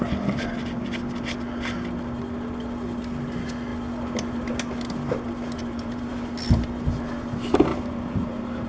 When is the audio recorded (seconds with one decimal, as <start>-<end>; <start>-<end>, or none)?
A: 0.0-5.6; 6.1-7.7